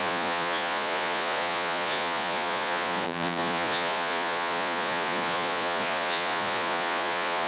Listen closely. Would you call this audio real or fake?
fake